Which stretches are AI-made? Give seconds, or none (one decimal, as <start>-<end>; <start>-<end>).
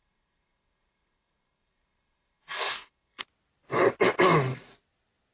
0.0-3.2